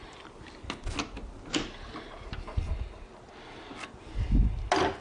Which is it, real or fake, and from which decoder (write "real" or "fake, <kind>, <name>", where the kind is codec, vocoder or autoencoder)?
real